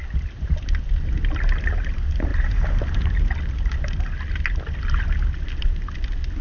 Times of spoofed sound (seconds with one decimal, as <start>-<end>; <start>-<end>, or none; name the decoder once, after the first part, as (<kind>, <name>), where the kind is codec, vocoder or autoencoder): 2.3-3.3 (vocoder, BigVGAN v2)